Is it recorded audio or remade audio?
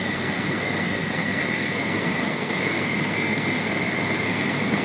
remade